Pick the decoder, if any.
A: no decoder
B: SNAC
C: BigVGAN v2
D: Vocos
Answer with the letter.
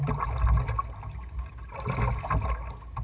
A